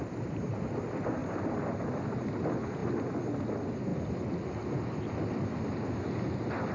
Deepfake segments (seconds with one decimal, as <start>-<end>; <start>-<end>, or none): none